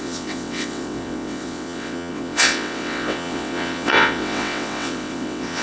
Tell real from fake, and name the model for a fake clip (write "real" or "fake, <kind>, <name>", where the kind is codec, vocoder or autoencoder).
fake, vocoder, WaveNeXt